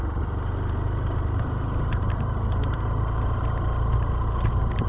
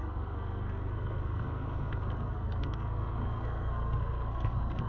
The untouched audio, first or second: first